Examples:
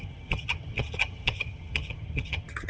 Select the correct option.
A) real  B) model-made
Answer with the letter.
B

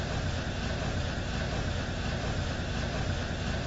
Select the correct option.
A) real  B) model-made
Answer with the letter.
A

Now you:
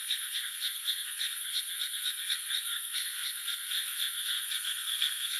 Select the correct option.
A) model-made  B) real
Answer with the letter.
A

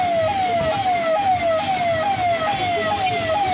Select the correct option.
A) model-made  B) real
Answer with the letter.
B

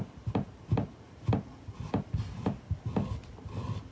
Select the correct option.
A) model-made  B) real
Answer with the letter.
B